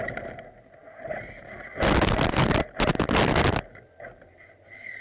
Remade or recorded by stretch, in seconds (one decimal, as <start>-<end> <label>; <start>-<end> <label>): 0.0-5.0 recorded